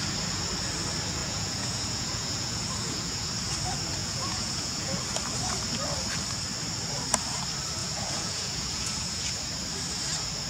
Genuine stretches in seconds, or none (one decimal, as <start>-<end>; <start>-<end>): 0.0-1.2; 3.3-4.0; 5.0-7.8; 9.3-10.5